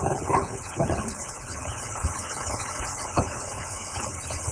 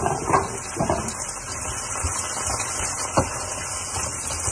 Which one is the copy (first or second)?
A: first